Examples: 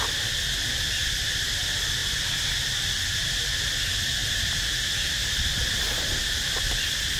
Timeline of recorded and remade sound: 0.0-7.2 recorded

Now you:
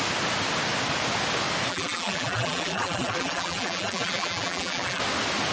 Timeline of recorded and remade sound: 0.0-1.7 recorded; 1.7-5.0 remade; 5.0-5.5 recorded

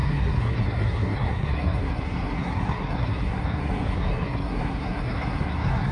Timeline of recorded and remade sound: 0.0-5.9 remade

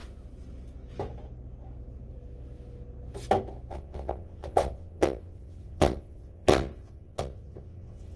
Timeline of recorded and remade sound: 0.0-3.7 recorded; 3.7-8.2 remade

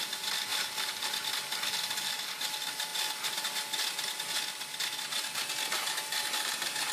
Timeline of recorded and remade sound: 0.0-0.5 recorded; 0.5-1.1 remade; 1.1-6.9 recorded

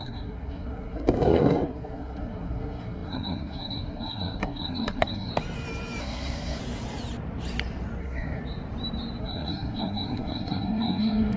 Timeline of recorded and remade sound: 0.0-5.3 remade; 5.3-6.0 recorded; 6.0-6.6 remade; 6.6-8.0 recorded; 8.0-8.4 remade; 8.4-9.2 recorded; 9.2-11.4 remade